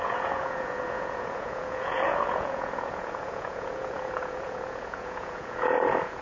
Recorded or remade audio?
remade